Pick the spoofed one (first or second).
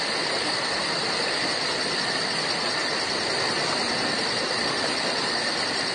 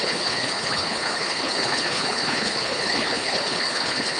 second